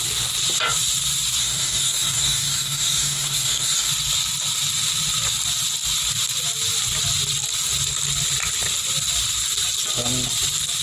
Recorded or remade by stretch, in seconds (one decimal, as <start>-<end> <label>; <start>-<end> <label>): 0.0-1.4 recorded; 1.4-3.9 remade; 3.9-10.8 recorded

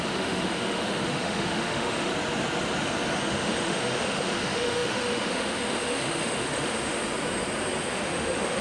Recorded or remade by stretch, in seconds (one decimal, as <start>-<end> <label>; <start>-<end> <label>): 0.0-2.1 remade; 2.1-3.3 recorded; 3.3-7.0 remade; 7.0-7.8 recorded; 7.8-8.6 remade

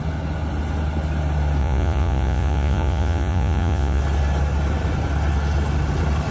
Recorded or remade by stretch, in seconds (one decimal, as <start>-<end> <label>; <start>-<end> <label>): 0.0-1.6 recorded; 1.6-4.0 remade; 4.0-6.3 recorded

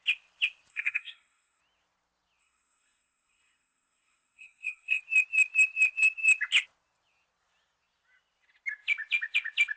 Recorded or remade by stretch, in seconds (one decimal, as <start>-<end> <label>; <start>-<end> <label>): 0.0-0.7 recorded; 0.7-1.6 remade; 1.6-2.4 recorded; 2.4-5.0 remade; 5.0-9.8 recorded

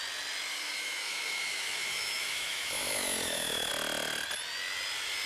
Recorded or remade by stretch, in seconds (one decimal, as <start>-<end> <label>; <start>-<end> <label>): 0.0-0.5 recorded; 0.5-3.7 remade; 3.7-5.3 recorded

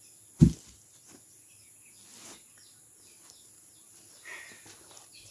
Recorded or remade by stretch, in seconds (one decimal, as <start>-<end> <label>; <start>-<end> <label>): 0.0-5.3 recorded

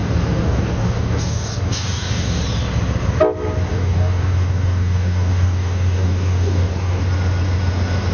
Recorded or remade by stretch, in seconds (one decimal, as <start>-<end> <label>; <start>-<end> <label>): 0.0-2.4 remade; 2.4-3.7 recorded; 3.7-7.0 remade; 7.0-8.1 recorded

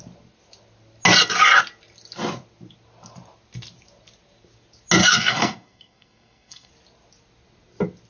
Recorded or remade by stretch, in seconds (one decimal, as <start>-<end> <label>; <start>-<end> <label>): 0.0-5.0 recorded; 5.0-6.7 remade; 6.7-8.1 recorded